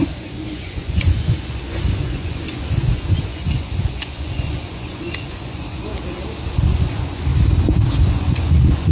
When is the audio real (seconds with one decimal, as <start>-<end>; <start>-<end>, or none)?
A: 5.9-6.5; 7.3-8.1